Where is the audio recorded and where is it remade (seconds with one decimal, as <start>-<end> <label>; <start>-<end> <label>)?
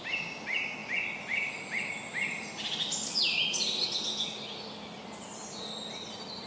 0.0-6.5 recorded